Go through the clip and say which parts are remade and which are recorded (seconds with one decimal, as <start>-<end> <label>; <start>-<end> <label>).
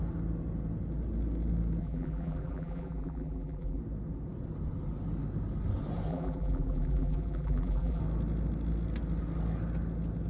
0.0-1.8 recorded; 1.8-3.8 remade; 3.8-6.1 recorded; 6.1-8.0 remade; 8.0-10.3 recorded